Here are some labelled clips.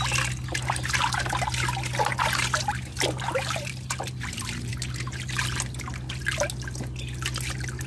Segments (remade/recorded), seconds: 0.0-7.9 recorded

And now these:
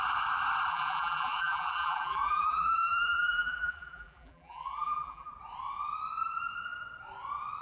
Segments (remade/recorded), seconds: 0.0-0.7 recorded; 0.7-5.3 remade; 5.3-7.6 recorded

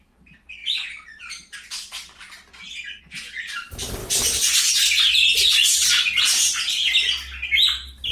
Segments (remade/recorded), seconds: 0.0-8.1 recorded